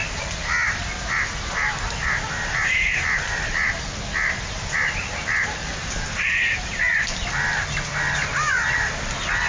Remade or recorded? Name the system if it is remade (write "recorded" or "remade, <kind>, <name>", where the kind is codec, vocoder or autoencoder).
recorded